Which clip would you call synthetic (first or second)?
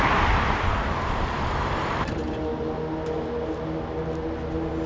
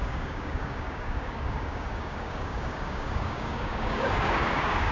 second